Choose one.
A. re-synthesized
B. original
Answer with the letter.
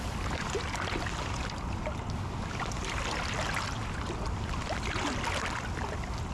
B